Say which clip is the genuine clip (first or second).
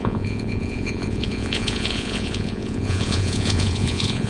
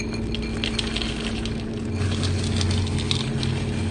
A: second